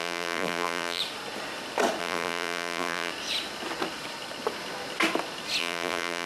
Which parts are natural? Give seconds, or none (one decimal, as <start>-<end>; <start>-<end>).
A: 1.0-2.0; 3.1-5.6